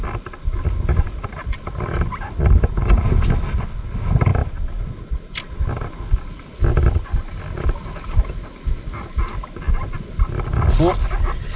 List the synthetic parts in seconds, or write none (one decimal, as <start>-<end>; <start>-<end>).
none